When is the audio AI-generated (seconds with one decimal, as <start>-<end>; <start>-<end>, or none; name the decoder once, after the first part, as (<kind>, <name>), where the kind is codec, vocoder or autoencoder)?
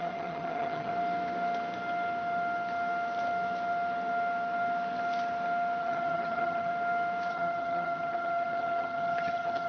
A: 0.0-0.9 (vocoder, HiFi-GAN); 5.8-6.7; 7.3-9.7